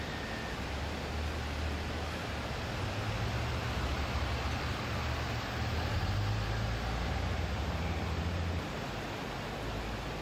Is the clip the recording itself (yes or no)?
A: yes